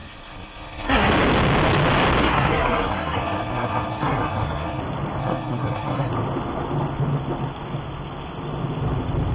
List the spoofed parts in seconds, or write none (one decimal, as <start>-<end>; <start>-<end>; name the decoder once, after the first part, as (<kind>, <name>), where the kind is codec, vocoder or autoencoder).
0.0-1.1 (codec, SNAC); 2.2-4.8; 5.2-6.1